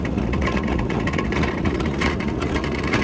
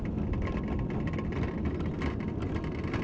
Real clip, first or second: second